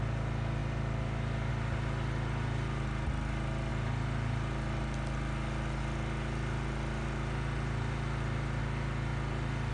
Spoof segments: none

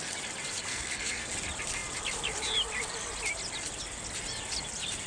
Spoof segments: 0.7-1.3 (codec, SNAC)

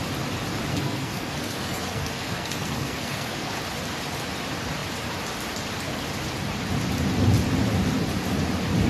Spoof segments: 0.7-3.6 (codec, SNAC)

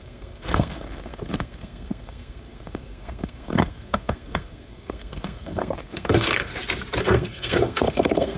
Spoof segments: 0.0-6.5 (codec, SNAC); 7.0-8.4

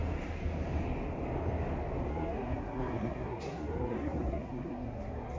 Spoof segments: 2.1-5.4 (codec, SNAC)

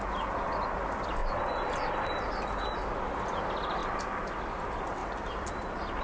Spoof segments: none

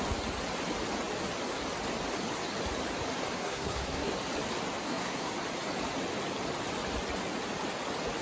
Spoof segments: 3.4-4.1 (codec, SNAC); 4.8-5.3